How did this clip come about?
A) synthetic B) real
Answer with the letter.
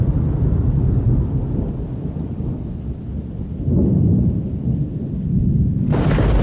B